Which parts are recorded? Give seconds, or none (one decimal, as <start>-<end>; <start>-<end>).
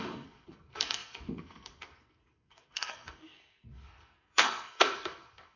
none